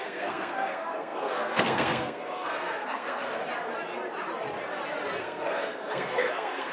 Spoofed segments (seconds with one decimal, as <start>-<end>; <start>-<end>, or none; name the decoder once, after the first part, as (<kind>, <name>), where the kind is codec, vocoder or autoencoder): 0.0-3.4 (codec, SNAC); 5.2-6.7